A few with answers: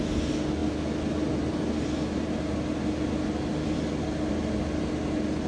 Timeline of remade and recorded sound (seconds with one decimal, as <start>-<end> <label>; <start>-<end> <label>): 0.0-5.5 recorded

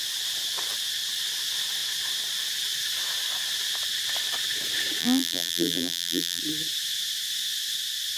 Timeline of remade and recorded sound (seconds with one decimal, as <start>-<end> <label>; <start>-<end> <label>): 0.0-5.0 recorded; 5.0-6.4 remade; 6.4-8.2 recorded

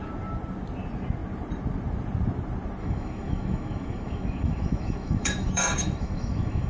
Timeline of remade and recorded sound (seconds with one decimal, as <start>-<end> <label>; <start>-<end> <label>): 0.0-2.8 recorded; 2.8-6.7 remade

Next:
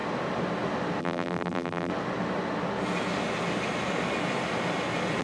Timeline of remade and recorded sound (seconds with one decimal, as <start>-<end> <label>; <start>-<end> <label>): 0.0-1.0 recorded; 1.0-1.9 remade; 1.9-5.2 recorded

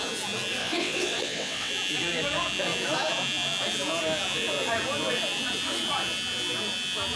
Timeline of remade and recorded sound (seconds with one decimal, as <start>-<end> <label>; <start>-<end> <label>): 0.0-0.6 recorded; 0.6-1.7 remade; 1.7-7.2 recorded